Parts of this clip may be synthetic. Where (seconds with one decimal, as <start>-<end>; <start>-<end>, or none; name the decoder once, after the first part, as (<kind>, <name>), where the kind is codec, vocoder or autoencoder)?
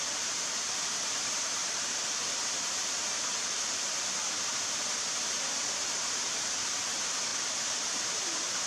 0.0-8.7 (vocoder, BigVGAN v2)